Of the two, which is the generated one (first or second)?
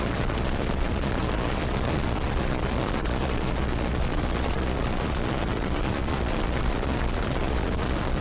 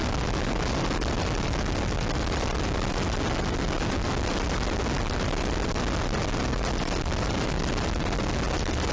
first